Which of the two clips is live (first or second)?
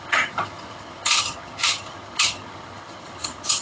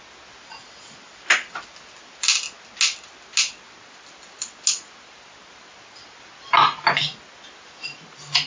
second